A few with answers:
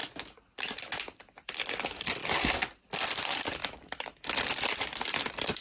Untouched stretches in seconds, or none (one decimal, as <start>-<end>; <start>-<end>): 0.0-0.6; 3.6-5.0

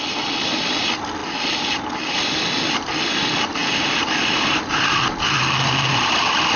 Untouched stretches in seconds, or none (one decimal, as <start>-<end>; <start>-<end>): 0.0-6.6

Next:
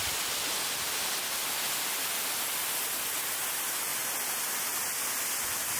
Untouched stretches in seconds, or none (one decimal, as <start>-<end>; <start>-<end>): 0.0-5.8

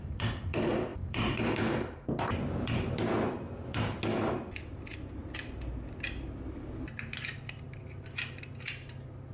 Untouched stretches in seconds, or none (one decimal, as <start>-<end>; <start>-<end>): 4.0-4.7; 5.2-6.7

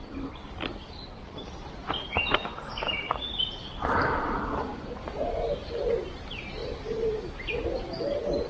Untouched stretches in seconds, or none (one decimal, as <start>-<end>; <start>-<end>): 0.0-1.8; 5.9-6.6; 7.2-8.5